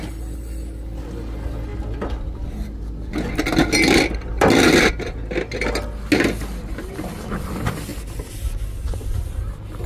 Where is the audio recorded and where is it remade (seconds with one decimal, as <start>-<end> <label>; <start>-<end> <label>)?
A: 0.0-9.9 recorded